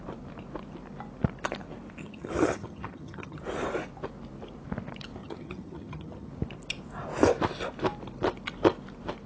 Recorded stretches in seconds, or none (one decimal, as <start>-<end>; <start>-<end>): 0.0-2.0; 3.4-5.2; 6.3-9.3